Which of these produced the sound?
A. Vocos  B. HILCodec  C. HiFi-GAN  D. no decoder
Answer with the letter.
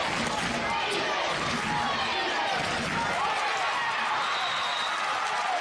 D